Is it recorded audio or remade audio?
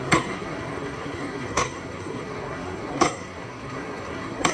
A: remade